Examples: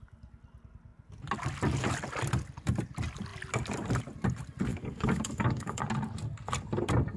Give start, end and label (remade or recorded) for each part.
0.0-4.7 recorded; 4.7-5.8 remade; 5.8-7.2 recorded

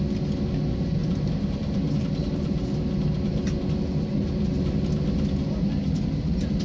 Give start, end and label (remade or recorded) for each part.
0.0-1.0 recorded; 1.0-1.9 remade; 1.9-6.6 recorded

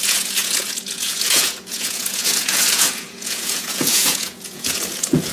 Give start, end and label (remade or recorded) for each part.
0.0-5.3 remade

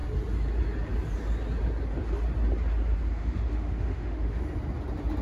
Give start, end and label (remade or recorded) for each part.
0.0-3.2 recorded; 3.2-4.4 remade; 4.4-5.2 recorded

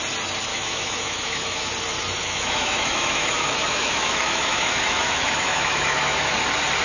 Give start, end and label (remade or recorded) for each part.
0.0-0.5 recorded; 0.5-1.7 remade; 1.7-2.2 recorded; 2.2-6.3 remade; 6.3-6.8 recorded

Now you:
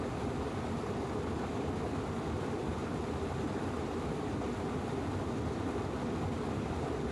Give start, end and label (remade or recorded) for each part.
0.0-7.1 recorded